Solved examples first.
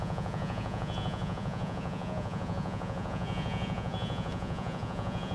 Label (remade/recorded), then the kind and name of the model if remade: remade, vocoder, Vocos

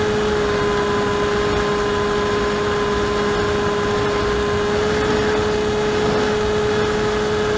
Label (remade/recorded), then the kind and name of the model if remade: recorded